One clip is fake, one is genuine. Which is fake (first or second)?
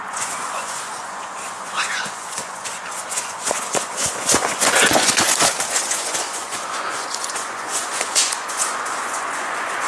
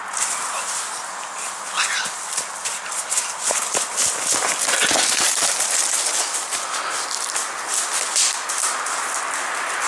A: first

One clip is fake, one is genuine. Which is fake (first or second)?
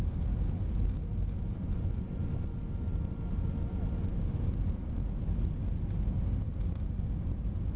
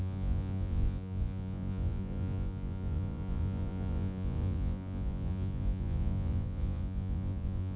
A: second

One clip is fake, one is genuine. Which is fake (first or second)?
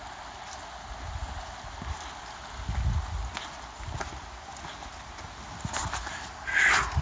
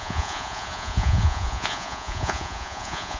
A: second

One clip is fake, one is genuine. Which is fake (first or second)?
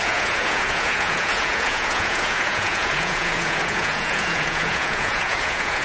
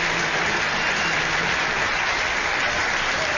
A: first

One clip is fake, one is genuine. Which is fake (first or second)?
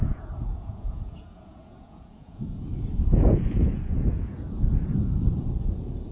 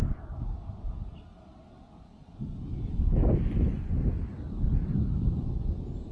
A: first